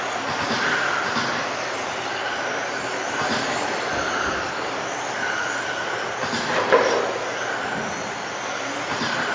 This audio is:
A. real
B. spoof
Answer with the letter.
A